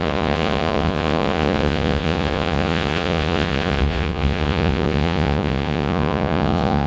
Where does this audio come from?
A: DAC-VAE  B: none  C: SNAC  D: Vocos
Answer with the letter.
D